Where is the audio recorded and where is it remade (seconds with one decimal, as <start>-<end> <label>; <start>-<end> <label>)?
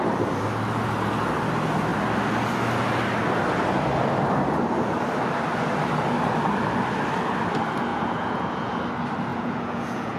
0.0-7.9 recorded; 7.9-8.8 remade; 8.8-9.3 recorded; 9.3-10.2 remade